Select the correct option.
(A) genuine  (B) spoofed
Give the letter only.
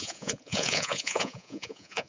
B